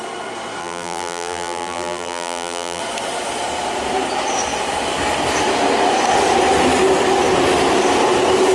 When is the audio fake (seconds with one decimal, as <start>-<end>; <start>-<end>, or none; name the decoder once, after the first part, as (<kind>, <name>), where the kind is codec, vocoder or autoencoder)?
0.6-2.8 (vocoder, BigVGAN v2)